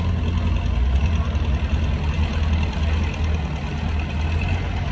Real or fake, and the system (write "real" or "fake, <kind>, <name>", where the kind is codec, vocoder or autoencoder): real